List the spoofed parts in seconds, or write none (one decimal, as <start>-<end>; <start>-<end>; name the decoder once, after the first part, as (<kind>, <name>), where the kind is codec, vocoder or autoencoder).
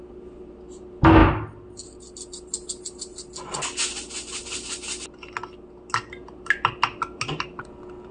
none